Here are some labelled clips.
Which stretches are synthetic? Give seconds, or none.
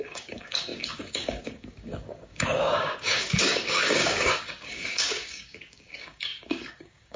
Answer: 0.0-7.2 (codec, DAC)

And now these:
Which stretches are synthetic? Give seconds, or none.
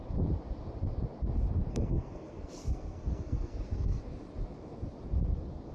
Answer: 1.7-4.0 (codec, SNAC)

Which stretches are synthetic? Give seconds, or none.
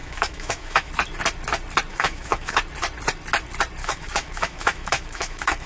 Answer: 0.0-0.9 (autoencoder, DAC-VAE); 1.9-2.6; 3.8-5.7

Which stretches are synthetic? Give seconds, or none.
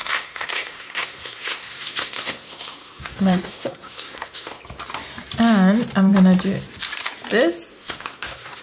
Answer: 0.0-4.6 (codec, SNAC); 7.7-8.6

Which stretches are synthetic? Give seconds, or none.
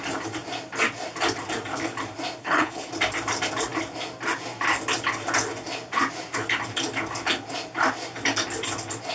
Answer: 2.4-2.9 (codec, HILCodec)